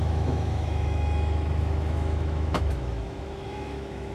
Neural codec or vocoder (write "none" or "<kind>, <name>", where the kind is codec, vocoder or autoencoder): autoencoder, DAC-VAE